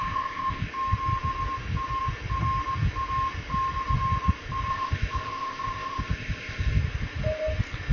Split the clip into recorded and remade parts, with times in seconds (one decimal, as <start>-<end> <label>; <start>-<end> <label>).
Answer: 0.0-0.7 remade; 0.7-4.7 recorded; 4.7-6.8 remade; 6.8-7.9 recorded